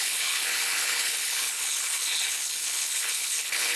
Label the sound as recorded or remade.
remade